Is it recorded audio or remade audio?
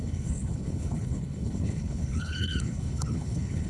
remade